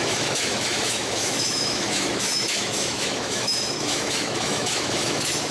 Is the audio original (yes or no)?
no